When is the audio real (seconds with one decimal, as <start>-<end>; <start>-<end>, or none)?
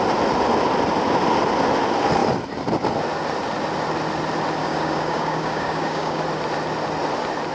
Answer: 0.0-4.6; 6.2-7.5